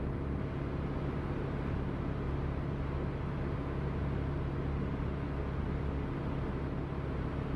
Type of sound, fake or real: real